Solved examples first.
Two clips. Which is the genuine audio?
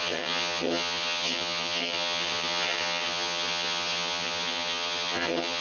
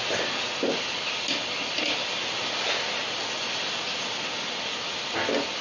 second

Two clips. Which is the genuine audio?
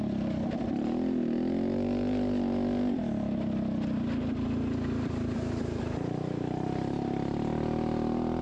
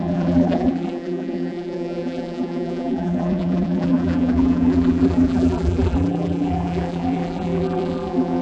first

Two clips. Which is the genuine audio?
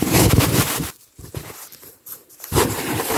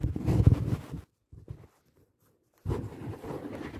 second